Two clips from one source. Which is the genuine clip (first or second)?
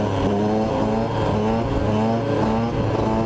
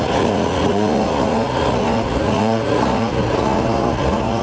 first